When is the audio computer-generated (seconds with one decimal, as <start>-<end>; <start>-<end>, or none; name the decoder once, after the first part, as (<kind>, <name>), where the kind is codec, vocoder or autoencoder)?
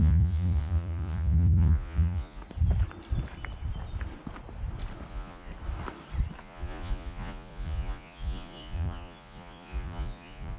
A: 0.0-2.4 (vocoder, Vocos); 5.1-5.5; 6.4-10.6